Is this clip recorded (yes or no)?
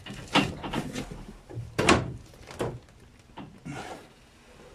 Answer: yes